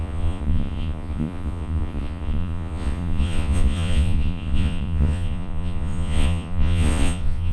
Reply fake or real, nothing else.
fake